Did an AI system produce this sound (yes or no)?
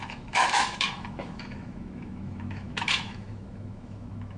yes